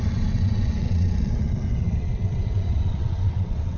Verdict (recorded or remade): remade